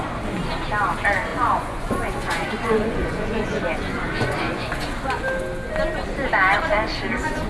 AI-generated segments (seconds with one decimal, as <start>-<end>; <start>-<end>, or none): 1.3-4.9